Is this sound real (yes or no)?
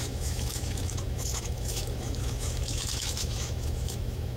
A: no